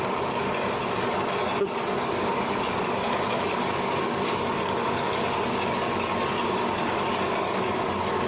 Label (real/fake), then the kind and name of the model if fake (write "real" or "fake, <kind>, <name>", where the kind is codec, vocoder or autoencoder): fake, codec, DAC